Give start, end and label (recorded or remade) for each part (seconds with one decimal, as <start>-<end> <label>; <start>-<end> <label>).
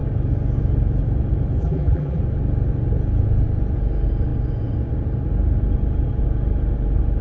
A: 0.0-1.6 recorded; 1.6-2.2 remade; 2.2-7.2 recorded